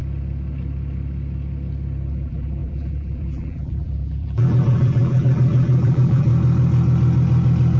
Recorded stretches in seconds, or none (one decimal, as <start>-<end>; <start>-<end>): 0.0-2.1; 6.3-7.8